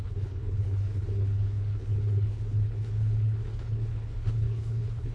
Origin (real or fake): fake